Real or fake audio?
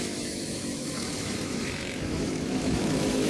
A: fake